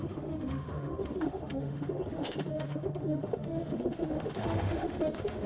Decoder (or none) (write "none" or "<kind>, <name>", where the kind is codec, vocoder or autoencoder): autoencoder, DAC-VAE